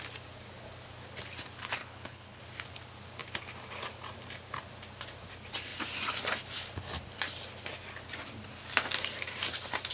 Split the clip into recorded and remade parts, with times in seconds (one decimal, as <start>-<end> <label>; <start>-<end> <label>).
0.0-1.8 recorded; 1.8-2.4 remade; 2.4-9.9 recorded